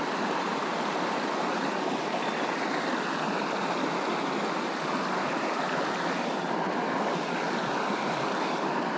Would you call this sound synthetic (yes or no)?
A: no